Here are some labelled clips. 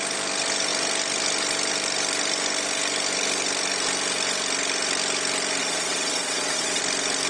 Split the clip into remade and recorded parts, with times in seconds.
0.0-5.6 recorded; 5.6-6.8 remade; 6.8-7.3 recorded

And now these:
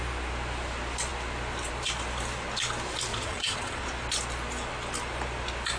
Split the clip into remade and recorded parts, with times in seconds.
0.0-3.1 recorded; 3.1-3.9 remade; 3.9-5.8 recorded

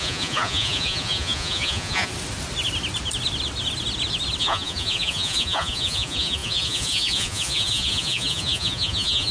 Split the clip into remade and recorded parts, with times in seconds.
0.0-2.1 remade; 2.1-4.4 recorded; 4.4-9.3 remade

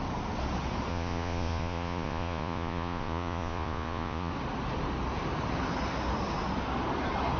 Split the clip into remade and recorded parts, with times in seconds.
0.0-0.9 recorded; 0.9-4.3 remade; 4.3-7.4 recorded

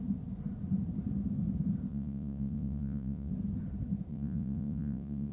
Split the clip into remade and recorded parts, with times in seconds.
0.0-1.9 recorded; 1.9-3.3 remade; 3.3-4.1 recorded; 4.1-5.3 remade

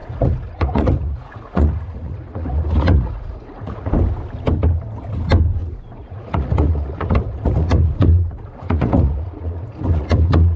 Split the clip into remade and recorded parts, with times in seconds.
0.0-3.9 remade; 3.9-5.6 recorded; 5.6-10.6 remade

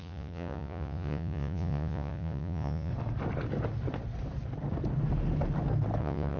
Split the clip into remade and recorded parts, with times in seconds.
0.0-2.9 remade; 2.9-6.0 recorded; 6.0-6.4 remade